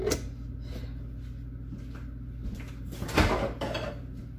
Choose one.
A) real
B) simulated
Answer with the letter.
A